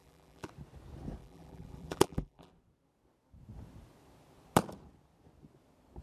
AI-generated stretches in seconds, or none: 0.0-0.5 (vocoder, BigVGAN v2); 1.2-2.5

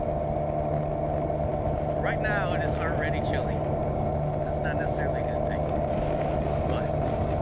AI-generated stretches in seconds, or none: none